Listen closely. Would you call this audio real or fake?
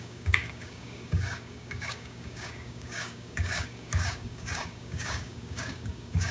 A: fake